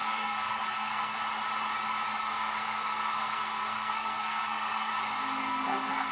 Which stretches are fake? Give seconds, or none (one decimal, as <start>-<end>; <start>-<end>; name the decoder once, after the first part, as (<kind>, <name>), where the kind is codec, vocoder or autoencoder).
0.0-1.2 (codec, SNAC); 2.2-4.9; 5.4-6.1